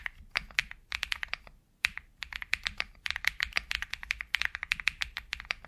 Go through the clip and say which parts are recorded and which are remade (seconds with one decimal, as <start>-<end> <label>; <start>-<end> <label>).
0.0-0.6 recorded; 0.6-4.0 remade; 4.0-5.7 recorded